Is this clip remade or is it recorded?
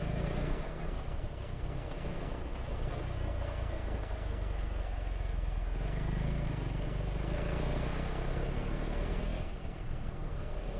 remade